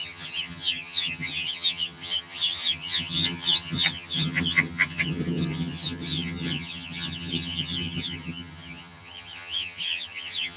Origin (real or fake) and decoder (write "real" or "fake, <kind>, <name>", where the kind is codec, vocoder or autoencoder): fake, vocoder, HiFi-GAN